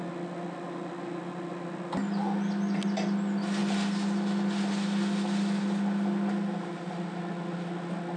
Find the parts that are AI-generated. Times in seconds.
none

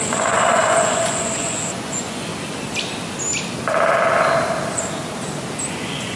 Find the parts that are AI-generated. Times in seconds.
0.0-2.3 (vocoder, Vocos); 5.7-6.2

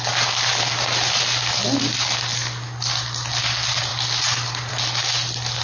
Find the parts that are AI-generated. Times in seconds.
none

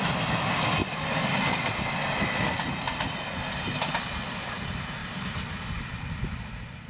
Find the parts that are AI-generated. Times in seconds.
none

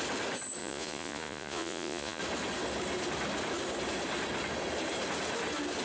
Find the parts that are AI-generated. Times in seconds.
0.6-2.2 (vocoder, Vocos)